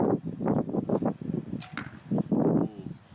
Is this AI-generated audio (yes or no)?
no